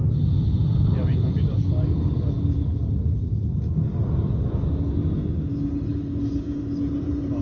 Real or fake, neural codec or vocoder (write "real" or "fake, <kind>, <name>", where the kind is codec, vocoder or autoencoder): real